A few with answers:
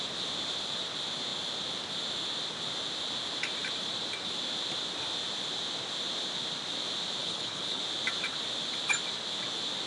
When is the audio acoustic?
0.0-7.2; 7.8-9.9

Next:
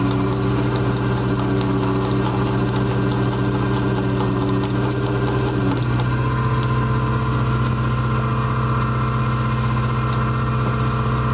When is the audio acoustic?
0.0-11.3

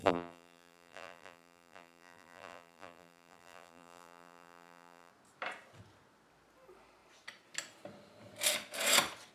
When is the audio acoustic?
5.1-9.3

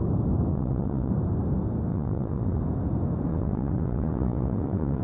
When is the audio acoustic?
0.0-0.5; 1.1-1.9; 2.6-3.3

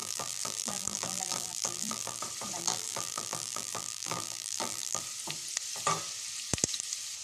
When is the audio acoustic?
2.2-2.6; 5.0-7.2

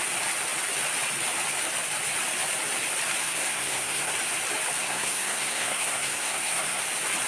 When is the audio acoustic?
0.0-3.2; 4.1-4.8; 6.8-7.3